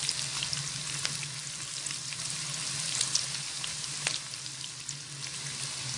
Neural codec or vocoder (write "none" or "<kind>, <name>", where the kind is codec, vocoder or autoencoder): none